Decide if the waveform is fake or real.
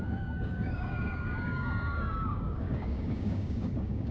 fake